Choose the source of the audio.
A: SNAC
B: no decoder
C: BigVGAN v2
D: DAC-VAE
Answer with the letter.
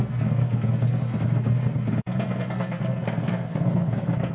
A